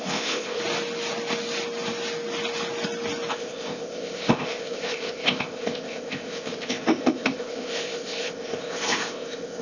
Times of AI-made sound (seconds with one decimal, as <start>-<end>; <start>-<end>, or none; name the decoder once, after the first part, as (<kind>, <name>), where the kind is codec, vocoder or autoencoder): 0.0-0.6 (codec, ZipCodec); 3.3-9.6